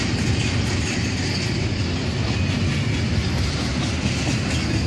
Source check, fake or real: real